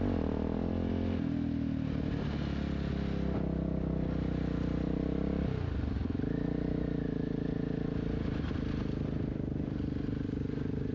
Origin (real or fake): real